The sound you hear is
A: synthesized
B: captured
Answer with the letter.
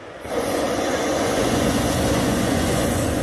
A